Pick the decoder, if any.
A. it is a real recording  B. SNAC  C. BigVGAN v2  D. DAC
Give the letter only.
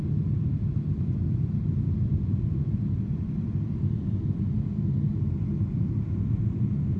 C